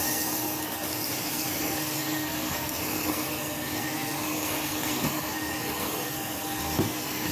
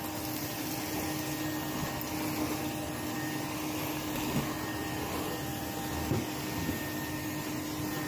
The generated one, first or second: first